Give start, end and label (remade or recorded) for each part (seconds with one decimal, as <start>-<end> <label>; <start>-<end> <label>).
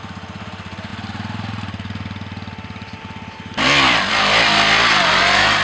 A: 0.0-5.6 recorded